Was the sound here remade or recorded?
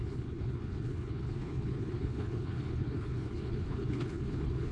remade